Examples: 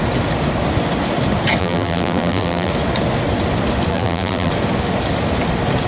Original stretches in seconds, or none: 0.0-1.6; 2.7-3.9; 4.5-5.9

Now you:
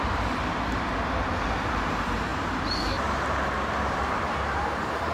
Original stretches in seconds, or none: none

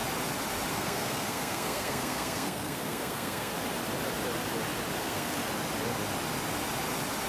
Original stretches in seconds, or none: 0.0-0.7; 3.5-5.0; 5.4-7.3

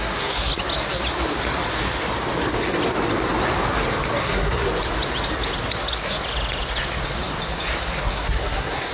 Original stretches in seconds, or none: 0.5-4.2; 4.7-8.1